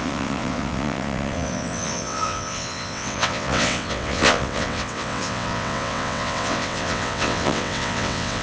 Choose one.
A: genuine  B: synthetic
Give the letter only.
B